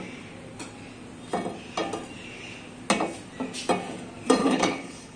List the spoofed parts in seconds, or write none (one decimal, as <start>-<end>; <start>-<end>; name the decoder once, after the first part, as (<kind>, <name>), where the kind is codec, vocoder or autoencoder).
4.4-5.2 (codec, HILCodec)